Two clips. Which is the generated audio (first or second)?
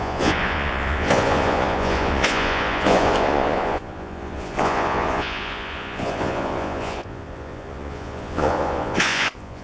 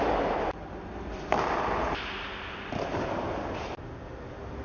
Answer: first